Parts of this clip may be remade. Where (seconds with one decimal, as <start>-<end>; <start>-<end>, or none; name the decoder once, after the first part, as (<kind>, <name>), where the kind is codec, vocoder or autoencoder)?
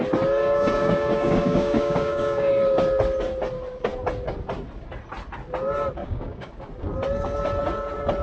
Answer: 0.4-2.5 (codec, DAC); 6.0-6.5